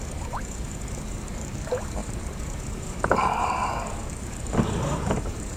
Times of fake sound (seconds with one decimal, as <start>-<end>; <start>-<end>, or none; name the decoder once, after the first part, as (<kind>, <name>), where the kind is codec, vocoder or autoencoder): 0.0-5.6 (codec, DAC)